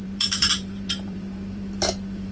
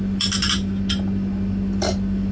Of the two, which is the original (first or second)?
second